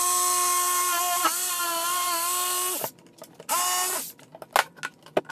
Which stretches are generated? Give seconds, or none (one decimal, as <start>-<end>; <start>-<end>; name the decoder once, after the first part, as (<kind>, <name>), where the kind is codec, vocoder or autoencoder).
none